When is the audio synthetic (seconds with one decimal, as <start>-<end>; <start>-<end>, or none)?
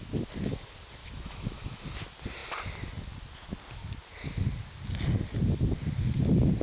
1.0-1.8